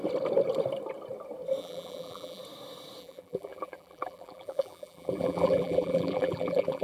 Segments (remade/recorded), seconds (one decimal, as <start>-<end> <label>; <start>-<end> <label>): 0.0-1.6 recorded; 1.6-2.4 remade; 2.4-3.0 recorded; 3.0-6.8 remade

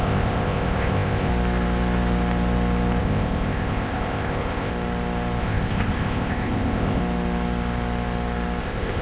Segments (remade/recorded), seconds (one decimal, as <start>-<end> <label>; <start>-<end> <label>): 0.0-1.3 remade; 1.3-3.0 recorded; 3.0-4.7 remade; 4.7-5.4 recorded; 5.4-7.0 remade; 7.0-8.6 recorded; 8.6-9.0 remade

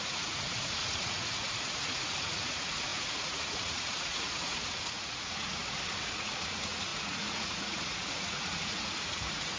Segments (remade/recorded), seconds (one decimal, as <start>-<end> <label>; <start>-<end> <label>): 0.0-5.6 remade; 5.6-6.1 recorded; 6.1-9.6 remade

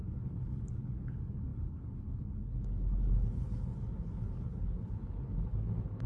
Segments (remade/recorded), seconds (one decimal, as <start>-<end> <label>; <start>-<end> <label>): 0.0-6.1 remade

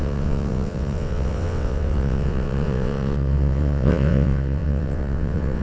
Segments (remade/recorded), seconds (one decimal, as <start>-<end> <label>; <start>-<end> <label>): 0.0-5.6 remade

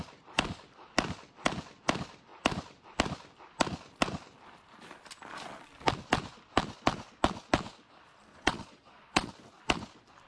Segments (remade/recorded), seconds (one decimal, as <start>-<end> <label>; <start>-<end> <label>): 0.0-8.3 recorded; 8.3-9.3 remade; 9.3-10.3 recorded

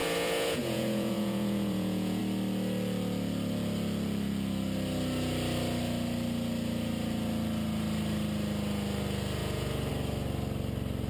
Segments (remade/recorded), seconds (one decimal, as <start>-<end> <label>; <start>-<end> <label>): 0.0-2.2 remade; 2.2-9.4 recorded; 9.4-9.9 remade; 9.9-11.1 recorded